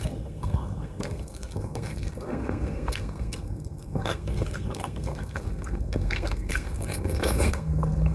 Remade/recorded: remade